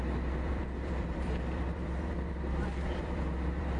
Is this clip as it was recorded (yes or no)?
no